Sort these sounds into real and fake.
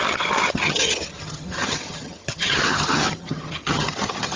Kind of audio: fake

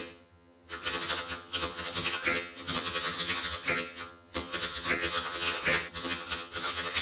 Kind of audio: fake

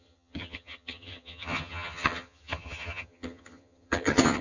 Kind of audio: fake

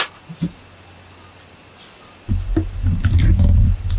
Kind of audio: real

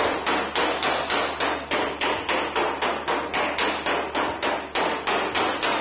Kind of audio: real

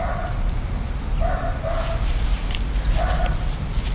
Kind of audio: real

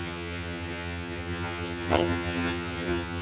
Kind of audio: fake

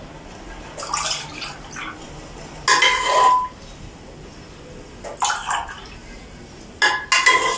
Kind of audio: real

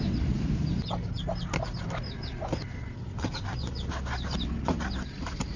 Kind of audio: real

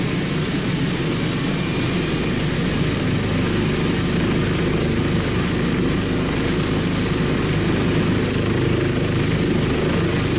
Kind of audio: real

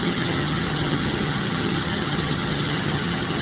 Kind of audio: fake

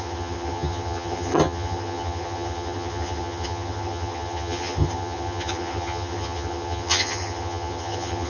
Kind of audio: fake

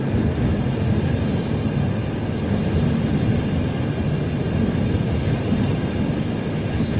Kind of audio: real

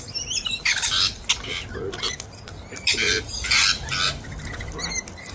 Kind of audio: real